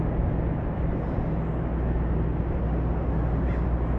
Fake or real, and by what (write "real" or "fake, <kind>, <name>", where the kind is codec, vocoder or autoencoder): real